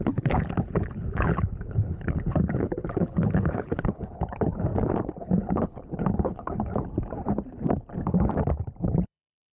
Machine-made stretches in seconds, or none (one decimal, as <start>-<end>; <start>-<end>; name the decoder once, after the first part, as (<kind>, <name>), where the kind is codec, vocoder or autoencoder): 0.0-4.7 (codec, HILCodec); 5.2-6.7; 8.8-9.5